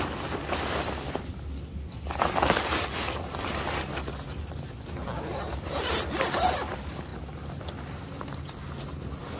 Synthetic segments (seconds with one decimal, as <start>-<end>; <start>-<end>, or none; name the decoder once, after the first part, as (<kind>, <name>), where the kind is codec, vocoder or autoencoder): none